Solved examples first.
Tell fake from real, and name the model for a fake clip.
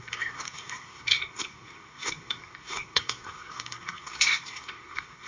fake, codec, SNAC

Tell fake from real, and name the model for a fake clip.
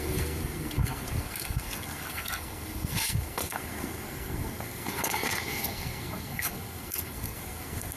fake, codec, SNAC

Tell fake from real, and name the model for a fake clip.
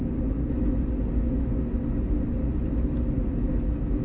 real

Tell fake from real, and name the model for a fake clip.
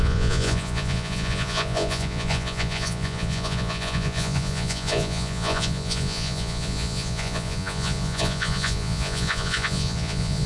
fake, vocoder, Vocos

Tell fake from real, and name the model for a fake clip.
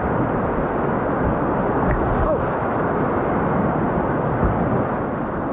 real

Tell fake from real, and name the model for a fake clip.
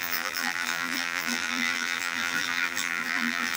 fake, vocoder, BigVGAN v2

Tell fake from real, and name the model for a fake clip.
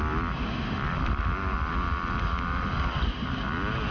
real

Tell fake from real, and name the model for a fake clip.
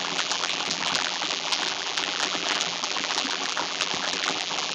fake, vocoder, BigVGAN v2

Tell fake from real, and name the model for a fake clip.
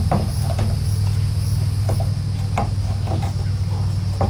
real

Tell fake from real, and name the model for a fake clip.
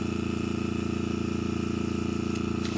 real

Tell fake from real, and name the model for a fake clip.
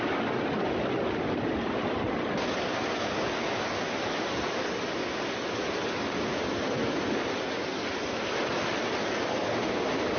real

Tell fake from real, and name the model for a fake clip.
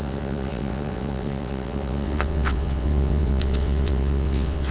fake, vocoder, WaveNeXt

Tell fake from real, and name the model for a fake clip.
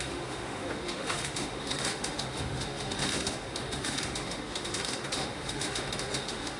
fake, autoencoder, DAC-VAE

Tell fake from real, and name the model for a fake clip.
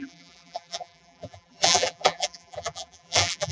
fake, vocoder, BigVGAN v2